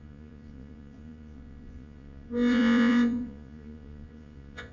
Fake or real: fake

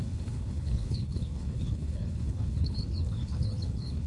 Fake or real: fake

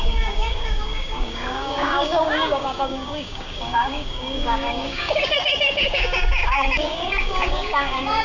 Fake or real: fake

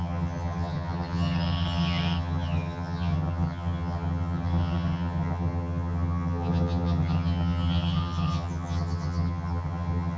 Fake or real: fake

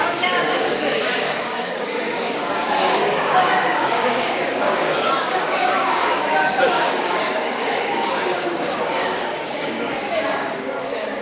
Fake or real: fake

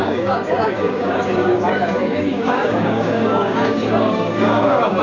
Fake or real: fake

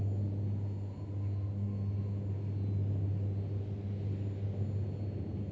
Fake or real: real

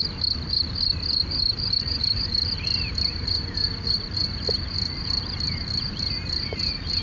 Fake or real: fake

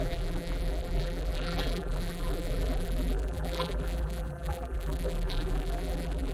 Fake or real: fake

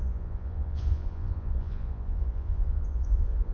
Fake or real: fake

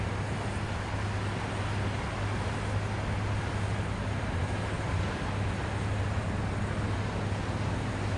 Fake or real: real